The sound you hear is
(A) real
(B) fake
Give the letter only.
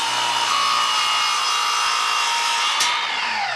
A